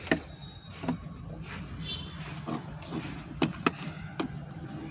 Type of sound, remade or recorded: recorded